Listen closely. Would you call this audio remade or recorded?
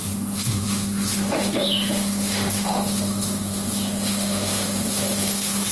remade